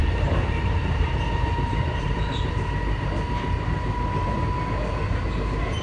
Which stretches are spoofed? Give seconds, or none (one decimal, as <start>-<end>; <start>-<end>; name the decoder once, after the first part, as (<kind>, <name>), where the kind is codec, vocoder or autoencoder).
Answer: 0.0-2.4 (vocoder, BigVGAN v2)